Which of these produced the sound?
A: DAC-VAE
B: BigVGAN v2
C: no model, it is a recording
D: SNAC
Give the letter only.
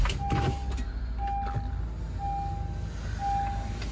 C